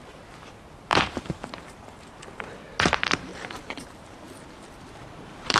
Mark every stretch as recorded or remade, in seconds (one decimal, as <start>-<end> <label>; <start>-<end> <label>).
0.0-0.9 recorded; 0.9-2.0 remade; 2.0-3.3 recorded; 3.3-5.6 remade